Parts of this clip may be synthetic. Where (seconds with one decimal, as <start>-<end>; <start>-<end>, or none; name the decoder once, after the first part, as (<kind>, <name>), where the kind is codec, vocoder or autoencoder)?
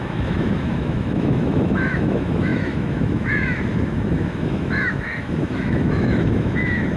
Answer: 0.0-7.0 (autoencoder, DAC-VAE)